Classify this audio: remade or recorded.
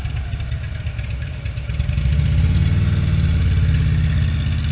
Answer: recorded